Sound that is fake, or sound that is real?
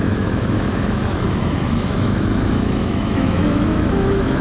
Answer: fake